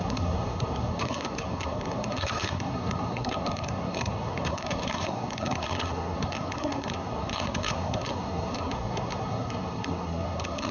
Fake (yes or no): yes